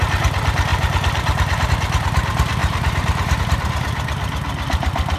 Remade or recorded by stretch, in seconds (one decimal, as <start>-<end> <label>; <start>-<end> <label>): 0.0-0.7 recorded; 0.7-1.7 remade; 1.7-2.6 recorded; 2.6-3.4 remade; 3.4-5.2 recorded